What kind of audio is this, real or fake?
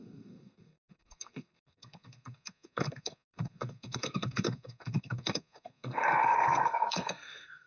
fake